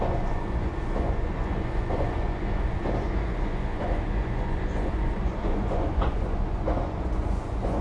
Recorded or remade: remade